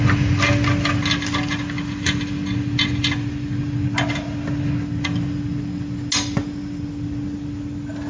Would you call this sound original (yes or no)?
yes